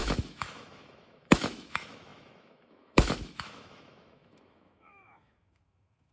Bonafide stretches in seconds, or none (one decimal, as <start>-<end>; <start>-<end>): none

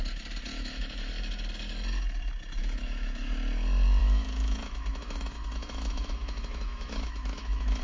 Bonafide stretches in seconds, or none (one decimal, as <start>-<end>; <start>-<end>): 0.0-0.5; 1.1-2.6; 3.3-4.0